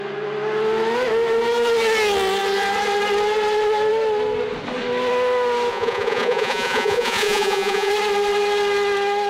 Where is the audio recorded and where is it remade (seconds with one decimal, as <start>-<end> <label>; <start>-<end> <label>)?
0.0-5.7 recorded; 5.7-7.9 remade; 7.9-9.3 recorded